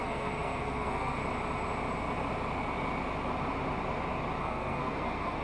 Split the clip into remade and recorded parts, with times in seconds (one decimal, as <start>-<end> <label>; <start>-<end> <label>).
0.0-1.2 remade; 1.2-4.4 recorded; 4.4-5.4 remade